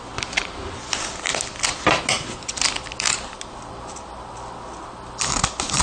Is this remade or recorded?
recorded